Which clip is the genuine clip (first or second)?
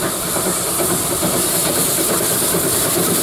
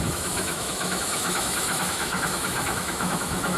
first